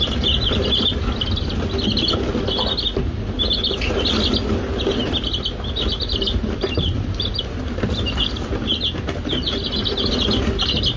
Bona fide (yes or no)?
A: yes